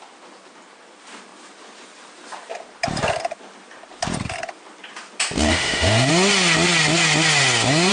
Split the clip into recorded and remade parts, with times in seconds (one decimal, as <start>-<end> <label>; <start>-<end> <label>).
0.0-5.5 recorded; 5.5-6.1 remade; 6.1-7.9 recorded